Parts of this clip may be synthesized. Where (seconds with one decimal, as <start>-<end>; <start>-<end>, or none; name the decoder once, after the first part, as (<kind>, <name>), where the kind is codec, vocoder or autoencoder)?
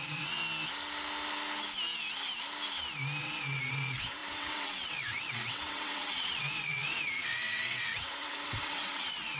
0.0-0.4 (vocoder, WaveNeXt); 3.2-9.4